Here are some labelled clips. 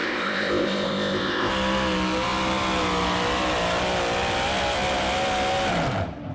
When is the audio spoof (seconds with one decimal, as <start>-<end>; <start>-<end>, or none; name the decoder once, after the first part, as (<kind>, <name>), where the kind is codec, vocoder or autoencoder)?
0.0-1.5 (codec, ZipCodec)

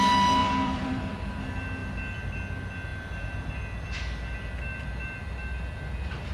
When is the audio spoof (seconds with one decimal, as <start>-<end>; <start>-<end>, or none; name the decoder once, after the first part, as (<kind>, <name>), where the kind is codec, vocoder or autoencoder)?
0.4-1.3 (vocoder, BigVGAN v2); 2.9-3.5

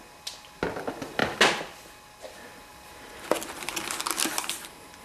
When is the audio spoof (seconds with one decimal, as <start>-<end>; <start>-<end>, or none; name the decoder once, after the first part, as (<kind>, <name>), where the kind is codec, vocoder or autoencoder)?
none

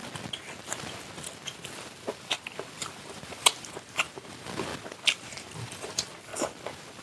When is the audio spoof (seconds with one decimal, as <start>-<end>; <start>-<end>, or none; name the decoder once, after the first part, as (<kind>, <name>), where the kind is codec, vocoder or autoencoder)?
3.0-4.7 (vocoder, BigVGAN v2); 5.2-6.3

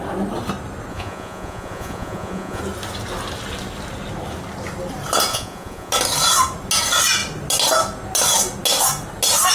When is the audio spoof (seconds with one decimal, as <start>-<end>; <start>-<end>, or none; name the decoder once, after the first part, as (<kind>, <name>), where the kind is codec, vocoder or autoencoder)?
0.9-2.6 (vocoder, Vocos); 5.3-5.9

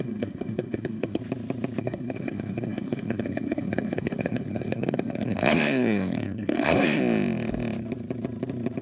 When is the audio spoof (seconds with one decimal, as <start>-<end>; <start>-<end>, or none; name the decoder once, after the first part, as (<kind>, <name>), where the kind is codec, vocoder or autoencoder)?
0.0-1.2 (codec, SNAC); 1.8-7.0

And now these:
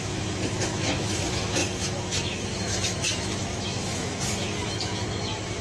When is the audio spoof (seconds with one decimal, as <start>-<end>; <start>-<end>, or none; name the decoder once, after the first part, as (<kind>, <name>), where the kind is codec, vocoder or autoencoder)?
0.0-5.6 (autoencoder, DAC-VAE)

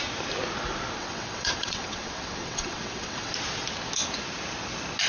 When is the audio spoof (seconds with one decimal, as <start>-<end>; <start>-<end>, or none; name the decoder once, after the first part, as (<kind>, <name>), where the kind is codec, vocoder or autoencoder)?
1.0-3.3 (vocoder, WaveNeXt)